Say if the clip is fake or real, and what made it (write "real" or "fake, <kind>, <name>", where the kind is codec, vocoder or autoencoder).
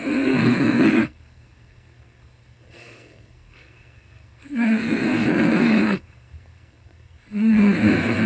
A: fake, codec, SNAC